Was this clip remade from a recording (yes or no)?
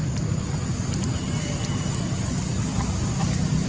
no